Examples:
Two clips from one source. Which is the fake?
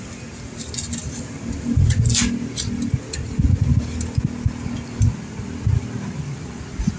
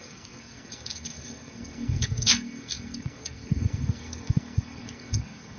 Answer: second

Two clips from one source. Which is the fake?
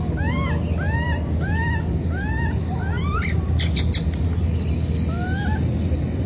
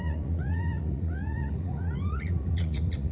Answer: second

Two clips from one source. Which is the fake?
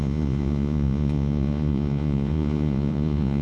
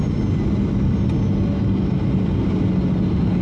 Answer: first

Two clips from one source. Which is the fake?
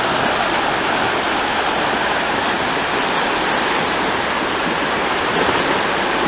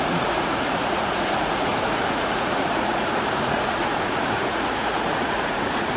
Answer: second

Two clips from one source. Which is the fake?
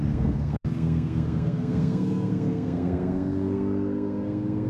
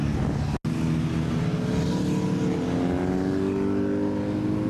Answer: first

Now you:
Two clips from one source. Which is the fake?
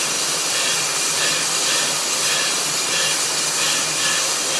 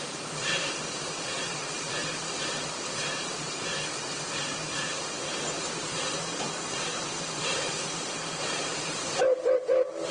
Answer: second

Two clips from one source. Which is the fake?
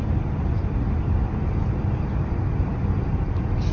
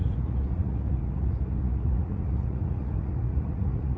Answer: second